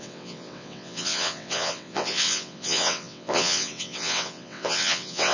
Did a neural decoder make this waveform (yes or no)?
yes